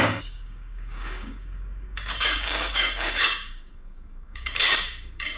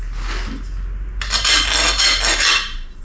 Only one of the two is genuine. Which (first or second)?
second